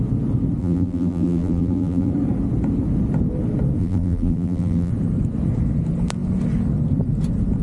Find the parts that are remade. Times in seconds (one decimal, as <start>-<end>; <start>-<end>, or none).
0.6-2.1; 3.8-4.9